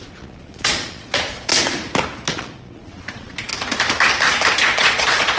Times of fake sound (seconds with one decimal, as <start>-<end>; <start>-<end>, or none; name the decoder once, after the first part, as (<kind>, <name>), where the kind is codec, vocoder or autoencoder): 0.0-1.5 (vocoder, Vocos); 2.3-3.5; 4.6-5.4